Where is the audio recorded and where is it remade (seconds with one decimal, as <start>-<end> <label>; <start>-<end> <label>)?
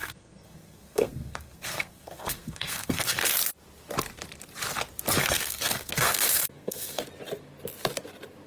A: 0.0-3.3 remade; 3.3-5.2 recorded; 5.2-7.0 remade; 7.0-8.5 recorded